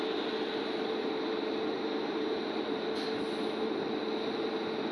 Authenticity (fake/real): real